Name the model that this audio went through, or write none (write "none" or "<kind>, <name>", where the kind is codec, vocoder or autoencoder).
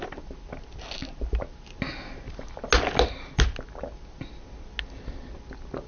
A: none